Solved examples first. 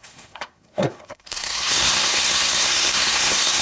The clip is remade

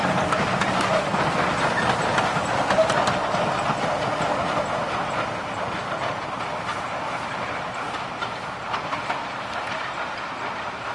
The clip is recorded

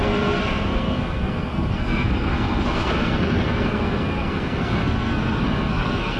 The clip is remade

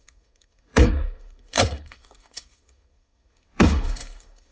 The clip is remade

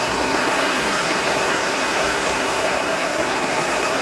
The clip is remade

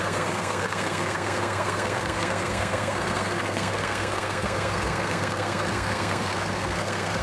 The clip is remade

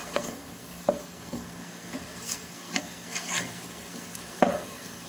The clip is remade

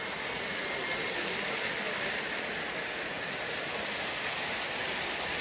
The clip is recorded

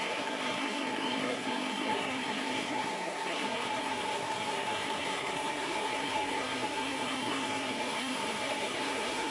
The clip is remade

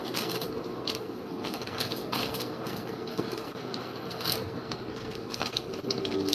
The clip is remade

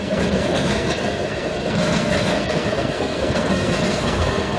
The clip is remade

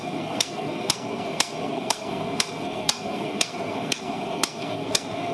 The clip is remade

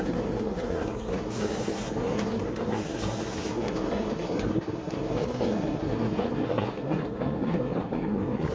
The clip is remade